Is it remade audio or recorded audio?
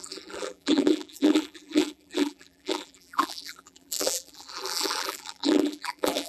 remade